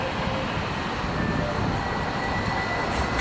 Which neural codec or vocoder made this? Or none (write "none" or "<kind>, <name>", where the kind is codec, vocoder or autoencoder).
none